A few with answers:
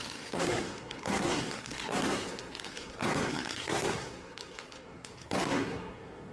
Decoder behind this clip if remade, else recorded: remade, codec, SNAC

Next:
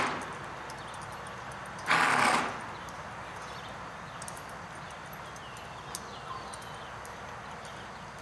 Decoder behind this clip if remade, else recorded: recorded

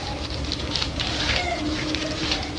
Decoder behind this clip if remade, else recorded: remade, vocoder, BigVGAN v2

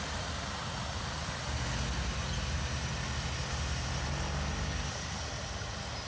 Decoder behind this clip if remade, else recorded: recorded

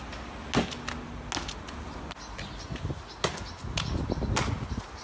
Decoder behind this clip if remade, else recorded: recorded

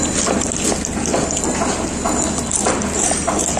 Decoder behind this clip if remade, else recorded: recorded